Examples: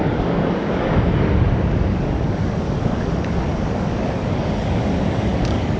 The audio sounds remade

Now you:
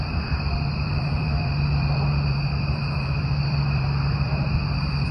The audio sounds remade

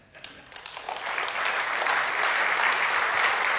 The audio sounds recorded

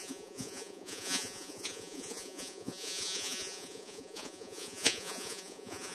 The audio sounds remade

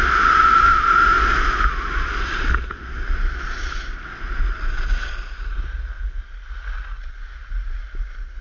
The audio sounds recorded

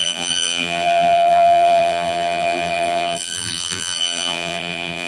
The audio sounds remade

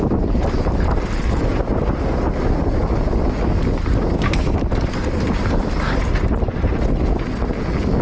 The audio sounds recorded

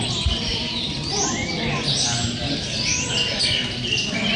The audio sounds recorded